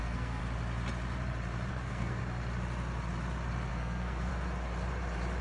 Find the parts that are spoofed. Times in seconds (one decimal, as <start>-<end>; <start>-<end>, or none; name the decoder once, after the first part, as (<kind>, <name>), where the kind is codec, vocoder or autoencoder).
0.0-0.4 (codec, SNAC); 1.7-2.2; 3.7-4.3